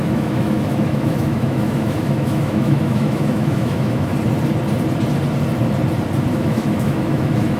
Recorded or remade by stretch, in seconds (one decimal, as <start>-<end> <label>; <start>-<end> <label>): 0.0-4.1 remade; 4.1-6.3 recorded; 6.3-7.6 remade